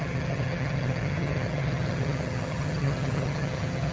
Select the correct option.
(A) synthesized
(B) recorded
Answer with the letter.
A